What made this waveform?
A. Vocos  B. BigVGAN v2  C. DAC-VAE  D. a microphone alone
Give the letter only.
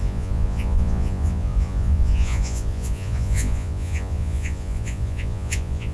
A